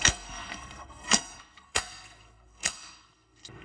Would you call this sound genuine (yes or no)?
no